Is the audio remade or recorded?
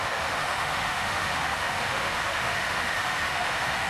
remade